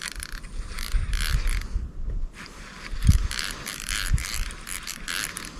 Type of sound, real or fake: real